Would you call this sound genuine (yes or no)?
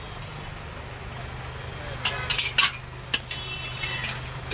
yes